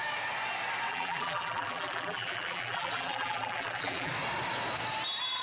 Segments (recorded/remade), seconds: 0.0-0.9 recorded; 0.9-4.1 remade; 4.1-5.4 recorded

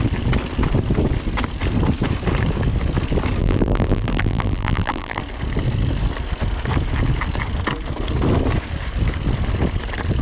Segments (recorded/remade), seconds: 0.0-3.4 recorded; 3.4-5.2 remade; 5.2-10.2 recorded

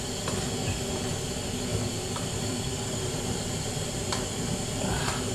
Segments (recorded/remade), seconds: 0.0-1.7 recorded; 1.7-5.3 remade

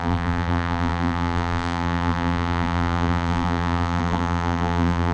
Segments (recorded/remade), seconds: 0.0-5.1 remade

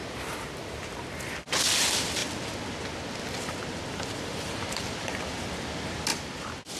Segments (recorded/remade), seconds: 0.0-1.1 remade; 1.1-4.3 recorded; 4.3-5.1 remade; 5.1-6.1 recorded; 6.1-6.8 remade

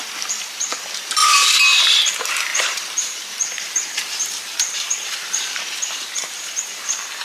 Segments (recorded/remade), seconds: 0.0-1.2 recorded; 1.2-2.0 remade; 2.0-2.5 recorded; 2.5-6.8 remade; 6.8-7.2 recorded

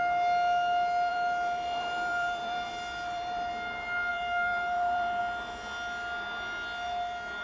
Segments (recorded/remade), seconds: 0.0-1.1 recorded; 1.1-3.5 remade; 3.5-4.1 recorded; 4.1-5.2 remade; 5.2-7.4 recorded

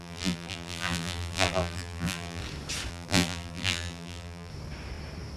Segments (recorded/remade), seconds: 0.0-2.4 remade; 2.4-2.9 recorded; 2.9-4.5 remade; 4.5-5.4 recorded